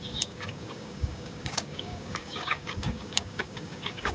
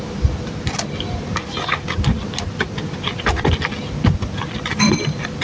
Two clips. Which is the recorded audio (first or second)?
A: second